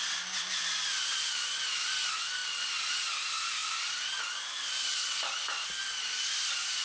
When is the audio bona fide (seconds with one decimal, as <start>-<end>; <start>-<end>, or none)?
0.0-6.8